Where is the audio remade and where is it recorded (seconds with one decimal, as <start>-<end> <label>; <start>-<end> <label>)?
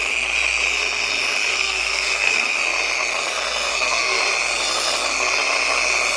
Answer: 0.0-1.5 recorded; 1.5-2.6 remade; 2.6-3.7 recorded; 3.7-4.2 remade; 4.2-6.2 recorded